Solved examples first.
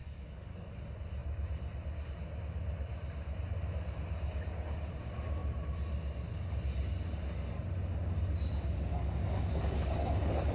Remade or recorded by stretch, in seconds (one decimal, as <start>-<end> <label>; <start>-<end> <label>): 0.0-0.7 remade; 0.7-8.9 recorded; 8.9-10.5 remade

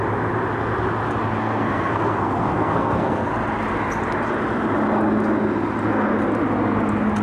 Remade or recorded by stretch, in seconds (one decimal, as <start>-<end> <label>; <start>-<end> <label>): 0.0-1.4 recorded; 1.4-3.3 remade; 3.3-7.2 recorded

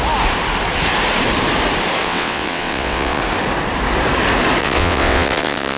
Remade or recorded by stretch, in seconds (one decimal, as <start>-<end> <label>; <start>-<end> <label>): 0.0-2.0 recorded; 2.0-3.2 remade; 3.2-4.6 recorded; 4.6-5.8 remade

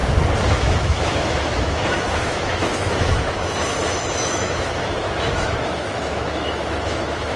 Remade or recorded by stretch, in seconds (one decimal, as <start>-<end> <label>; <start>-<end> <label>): 0.0-0.5 recorded; 0.5-3.1 remade; 3.1-4.0 recorded; 4.0-7.4 remade